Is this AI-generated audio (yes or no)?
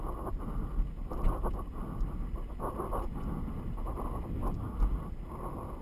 no